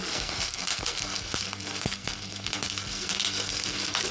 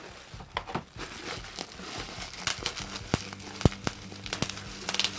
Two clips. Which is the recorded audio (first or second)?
second